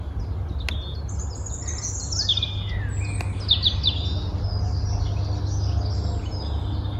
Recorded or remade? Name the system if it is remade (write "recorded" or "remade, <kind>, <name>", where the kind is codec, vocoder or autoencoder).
recorded